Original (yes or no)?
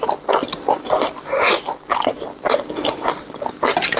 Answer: yes